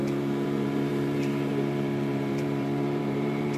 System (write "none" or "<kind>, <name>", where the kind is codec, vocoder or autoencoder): vocoder, BigVGAN v2